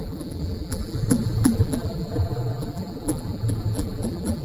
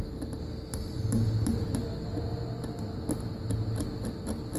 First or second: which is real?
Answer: second